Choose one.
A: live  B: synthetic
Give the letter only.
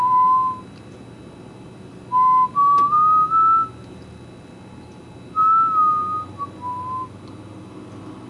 A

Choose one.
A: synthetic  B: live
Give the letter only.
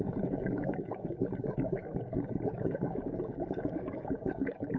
A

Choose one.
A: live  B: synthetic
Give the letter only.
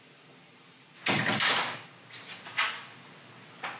A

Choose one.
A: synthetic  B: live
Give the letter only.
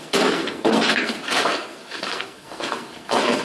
A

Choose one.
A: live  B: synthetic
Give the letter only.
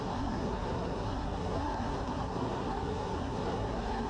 B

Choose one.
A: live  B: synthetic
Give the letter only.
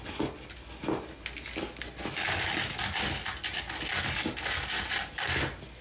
A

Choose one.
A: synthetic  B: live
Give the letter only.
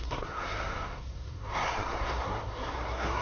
A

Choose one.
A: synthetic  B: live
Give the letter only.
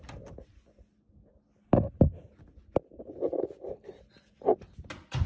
B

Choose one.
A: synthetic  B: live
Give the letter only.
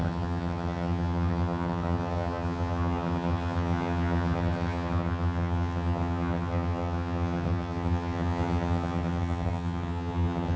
A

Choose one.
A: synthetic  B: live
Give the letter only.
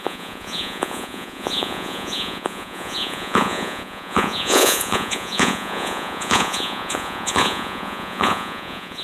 A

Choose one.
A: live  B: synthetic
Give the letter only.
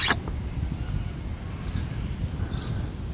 A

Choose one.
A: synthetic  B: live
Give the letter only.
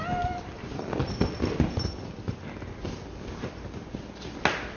B